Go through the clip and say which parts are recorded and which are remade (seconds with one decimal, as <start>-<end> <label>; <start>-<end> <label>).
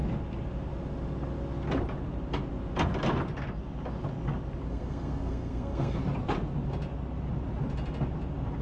0.0-4.7 recorded; 4.7-6.0 remade; 6.0-8.6 recorded